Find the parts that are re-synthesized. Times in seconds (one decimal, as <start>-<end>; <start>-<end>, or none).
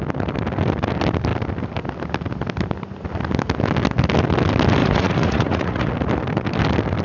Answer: 4.8-5.9